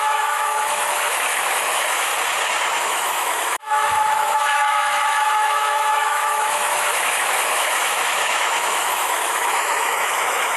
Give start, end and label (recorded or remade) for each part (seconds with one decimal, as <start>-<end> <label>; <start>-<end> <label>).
0.0-2.1 remade; 2.1-2.8 recorded; 2.8-10.6 remade